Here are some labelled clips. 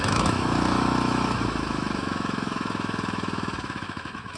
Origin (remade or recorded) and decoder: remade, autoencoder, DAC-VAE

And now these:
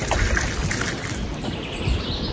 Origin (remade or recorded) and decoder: recorded